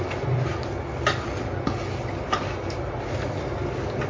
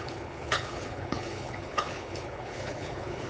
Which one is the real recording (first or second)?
first